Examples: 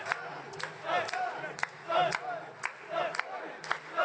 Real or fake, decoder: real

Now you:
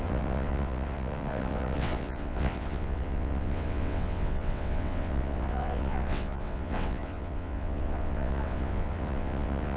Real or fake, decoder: fake, vocoder, WaveNeXt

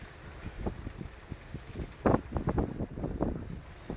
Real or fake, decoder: real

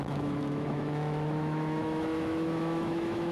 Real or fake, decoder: fake, autoencoder, DAC-VAE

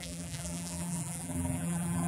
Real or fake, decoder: fake, vocoder, BigVGAN v2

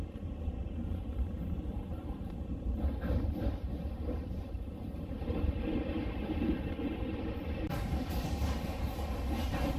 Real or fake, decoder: fake, vocoder, BigVGAN v2